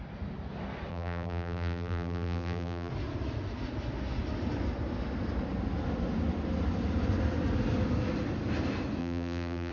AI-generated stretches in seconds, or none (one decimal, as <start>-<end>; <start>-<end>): 0.9-2.9; 9.0-9.7